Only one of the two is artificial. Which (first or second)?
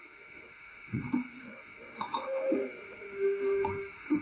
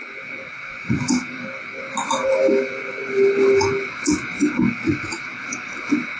first